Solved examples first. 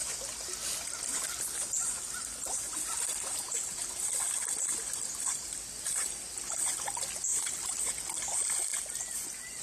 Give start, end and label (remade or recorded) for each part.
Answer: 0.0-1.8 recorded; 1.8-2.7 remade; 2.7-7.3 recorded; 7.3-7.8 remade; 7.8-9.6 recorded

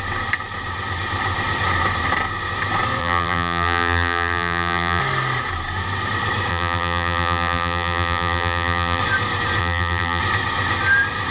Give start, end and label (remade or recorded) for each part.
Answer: 0.0-3.0 recorded; 3.0-5.0 remade; 5.0-6.5 recorded; 6.5-9.0 remade; 9.0-9.6 recorded; 9.6-10.2 remade; 10.2-11.3 recorded

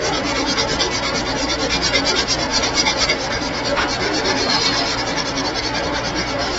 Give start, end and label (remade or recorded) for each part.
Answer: 0.0-2.5 recorded; 2.5-5.6 remade; 5.6-6.6 recorded

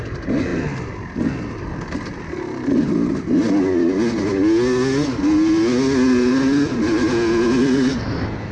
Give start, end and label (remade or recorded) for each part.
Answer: 0.0-8.5 recorded